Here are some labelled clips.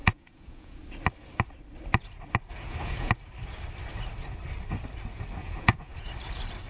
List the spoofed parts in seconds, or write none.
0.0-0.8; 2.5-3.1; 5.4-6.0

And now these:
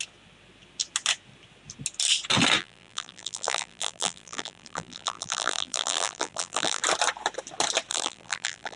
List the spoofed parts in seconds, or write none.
2.6-6.8; 7.9-8.8

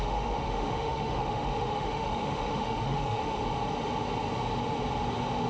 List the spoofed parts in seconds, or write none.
0.0-3.4

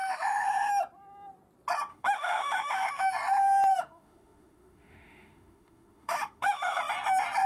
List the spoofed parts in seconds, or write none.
0.0-0.7; 1.9-3.1; 3.7-6.8

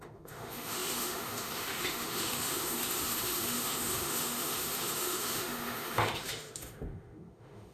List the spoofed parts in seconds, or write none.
0.0-7.7

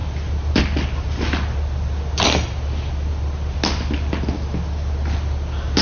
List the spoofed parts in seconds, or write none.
none

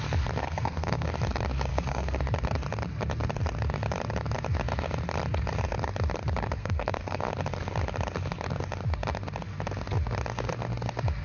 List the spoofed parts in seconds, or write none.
0.4-1.1; 1.7-2.2; 6.6-7.3